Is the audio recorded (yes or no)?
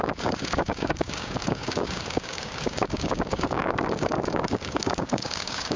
no